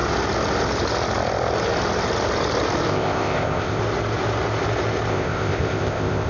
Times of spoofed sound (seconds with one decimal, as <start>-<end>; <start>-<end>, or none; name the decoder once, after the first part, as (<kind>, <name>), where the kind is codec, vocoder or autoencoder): 2.9-3.8 (codec, ZipCodec); 5.1-6.3